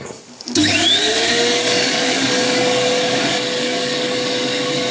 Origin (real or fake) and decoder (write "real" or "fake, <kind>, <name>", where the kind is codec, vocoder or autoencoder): fake, codec, DAC